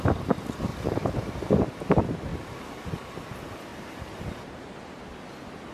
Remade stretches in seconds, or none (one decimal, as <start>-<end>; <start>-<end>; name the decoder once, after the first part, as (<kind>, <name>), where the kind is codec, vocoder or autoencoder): 0.7-1.5 (vocoder, BigVGAN v2); 3.7-5.1